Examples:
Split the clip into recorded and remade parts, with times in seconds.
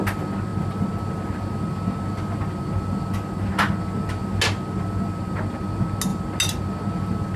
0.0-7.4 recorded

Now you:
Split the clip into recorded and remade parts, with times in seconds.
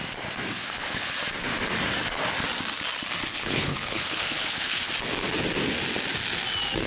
0.0-0.6 recorded; 0.6-1.1 remade; 1.1-3.3 recorded; 3.3-4.9 remade; 4.9-6.9 recorded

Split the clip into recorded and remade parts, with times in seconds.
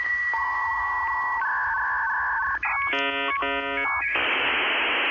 0.0-0.9 remade; 0.9-4.0 recorded; 4.0-4.5 remade; 4.5-5.1 recorded